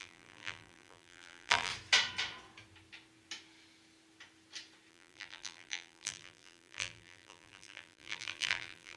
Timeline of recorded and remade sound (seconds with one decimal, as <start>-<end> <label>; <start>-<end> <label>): 0.0-1.7 remade; 1.7-4.9 recorded; 4.9-9.0 remade

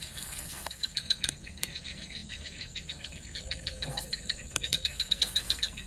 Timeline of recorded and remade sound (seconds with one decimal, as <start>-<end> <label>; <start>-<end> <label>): 0.0-5.9 remade

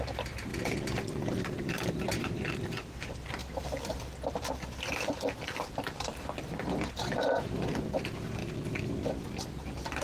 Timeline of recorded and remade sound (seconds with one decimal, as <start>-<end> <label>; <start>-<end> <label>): 0.0-8.4 remade; 8.4-8.9 recorded; 8.9-10.0 remade

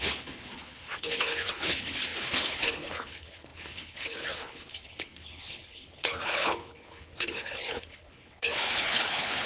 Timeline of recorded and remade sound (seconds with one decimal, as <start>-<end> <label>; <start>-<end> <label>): 0.0-9.5 remade

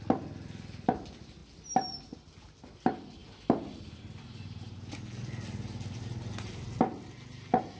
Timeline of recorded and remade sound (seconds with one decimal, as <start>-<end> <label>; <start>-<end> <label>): 0.0-7.8 recorded

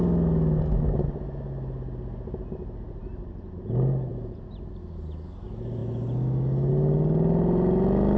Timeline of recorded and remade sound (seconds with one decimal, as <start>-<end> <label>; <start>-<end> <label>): 0.0-8.2 recorded